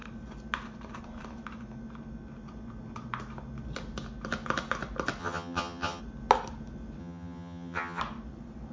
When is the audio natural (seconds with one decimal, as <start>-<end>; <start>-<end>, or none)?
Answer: 0.0-5.2; 6.0-7.0; 8.0-8.7